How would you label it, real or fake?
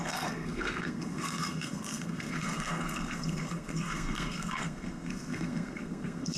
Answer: fake